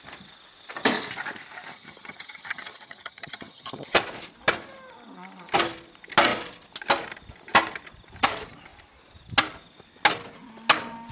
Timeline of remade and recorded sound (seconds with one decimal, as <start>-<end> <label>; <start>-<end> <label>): 0.0-1.7 recorded; 1.7-4.0 remade; 4.0-11.1 recorded